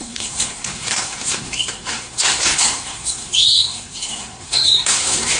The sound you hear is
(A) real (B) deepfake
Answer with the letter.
B